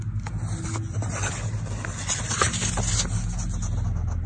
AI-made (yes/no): no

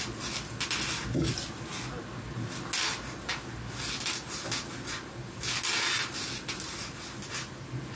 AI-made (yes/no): no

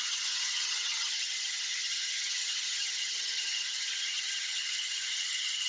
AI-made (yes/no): yes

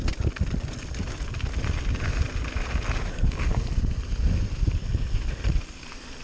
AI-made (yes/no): no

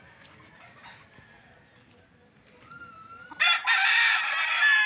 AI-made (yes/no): no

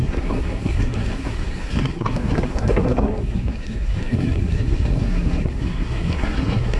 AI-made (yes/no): yes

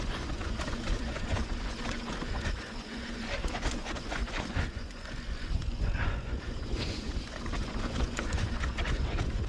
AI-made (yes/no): yes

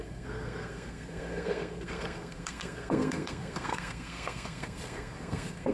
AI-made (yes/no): yes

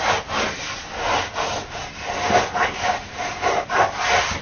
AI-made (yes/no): no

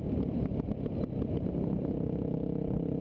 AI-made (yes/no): no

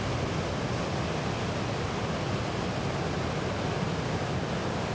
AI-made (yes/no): no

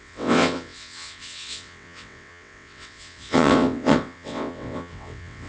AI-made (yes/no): yes